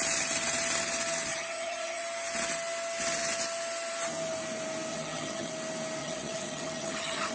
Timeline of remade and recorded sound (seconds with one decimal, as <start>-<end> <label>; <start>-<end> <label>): 0.0-1.3 recorded; 1.3-2.0 remade; 2.0-4.9 recorded; 4.9-5.5 remade; 5.5-6.0 recorded; 6.0-7.3 remade